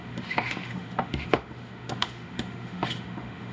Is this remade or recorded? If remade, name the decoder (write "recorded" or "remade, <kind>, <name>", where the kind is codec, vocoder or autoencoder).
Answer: remade, autoencoder, DAC-VAE